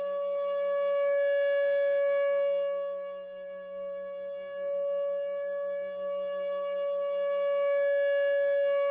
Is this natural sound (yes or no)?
yes